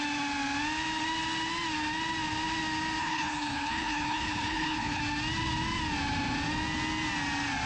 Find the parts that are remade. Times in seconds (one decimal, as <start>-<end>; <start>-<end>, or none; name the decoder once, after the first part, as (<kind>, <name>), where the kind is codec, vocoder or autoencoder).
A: 3.0-5.0 (codec, HILCodec)